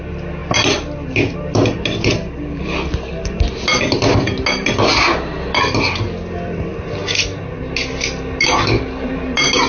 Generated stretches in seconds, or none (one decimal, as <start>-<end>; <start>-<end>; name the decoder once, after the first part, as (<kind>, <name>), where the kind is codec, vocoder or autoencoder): none